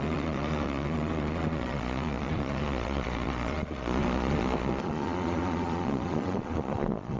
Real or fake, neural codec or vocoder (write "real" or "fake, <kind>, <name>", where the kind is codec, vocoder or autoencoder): fake, vocoder, Vocos